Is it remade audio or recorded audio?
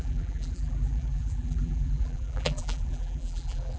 remade